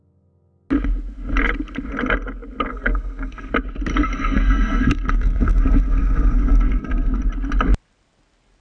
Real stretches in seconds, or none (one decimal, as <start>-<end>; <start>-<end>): 0.0-2.7; 3.5-3.9; 7.2-8.6